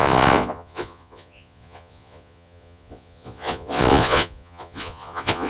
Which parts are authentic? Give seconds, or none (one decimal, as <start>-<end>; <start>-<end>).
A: none